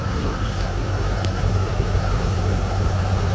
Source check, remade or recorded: remade